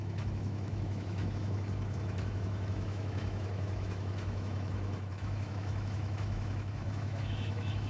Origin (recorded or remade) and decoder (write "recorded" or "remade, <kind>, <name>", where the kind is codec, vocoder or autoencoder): remade, autoencoder, DAC-VAE